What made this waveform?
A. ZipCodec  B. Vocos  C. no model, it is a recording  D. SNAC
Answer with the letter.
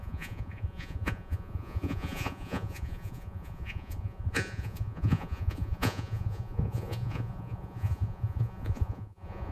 B